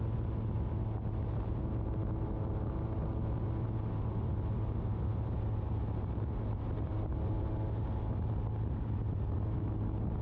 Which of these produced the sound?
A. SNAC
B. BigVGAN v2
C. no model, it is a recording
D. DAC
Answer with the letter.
C